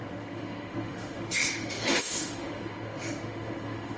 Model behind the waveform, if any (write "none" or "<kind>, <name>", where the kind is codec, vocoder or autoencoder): autoencoder, DAC-VAE